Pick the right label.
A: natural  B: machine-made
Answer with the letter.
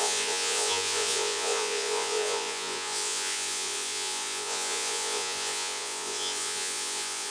B